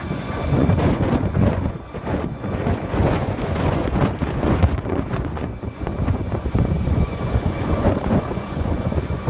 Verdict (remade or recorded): remade